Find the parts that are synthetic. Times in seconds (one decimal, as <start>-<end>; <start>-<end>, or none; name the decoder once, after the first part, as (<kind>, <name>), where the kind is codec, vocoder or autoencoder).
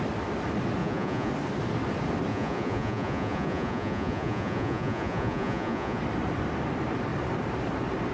0.8-1.3 (vocoder, Vocos); 2.3-6.0